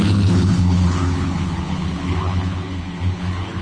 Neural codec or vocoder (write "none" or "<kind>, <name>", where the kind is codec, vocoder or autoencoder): codec, HILCodec